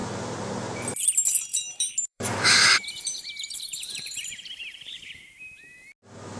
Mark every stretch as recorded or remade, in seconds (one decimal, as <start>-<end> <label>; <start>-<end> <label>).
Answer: 0.0-1.5 recorded; 1.5-5.3 remade; 5.3-6.4 recorded